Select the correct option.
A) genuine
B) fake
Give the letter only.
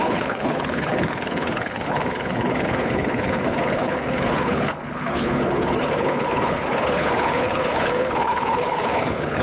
B